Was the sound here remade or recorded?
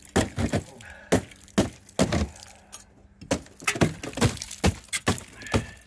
recorded